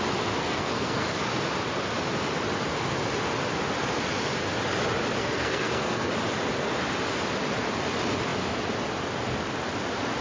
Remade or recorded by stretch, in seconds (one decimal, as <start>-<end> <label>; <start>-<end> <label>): 0.0-0.4 recorded; 0.4-1.2 remade; 1.2-5.2 recorded; 5.2-6.1 remade; 6.1-10.2 recorded